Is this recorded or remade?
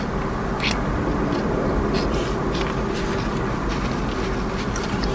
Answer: recorded